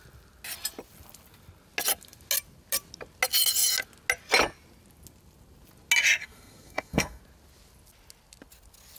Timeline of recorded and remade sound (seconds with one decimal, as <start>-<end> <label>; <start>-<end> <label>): 0.0-6.2 recorded; 6.2-7.2 remade; 7.2-9.0 recorded